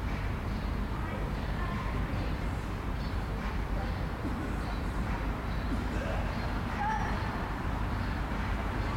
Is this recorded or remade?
remade